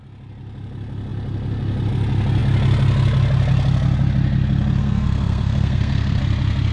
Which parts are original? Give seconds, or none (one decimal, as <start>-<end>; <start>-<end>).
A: 0.0-4.8; 6.2-6.7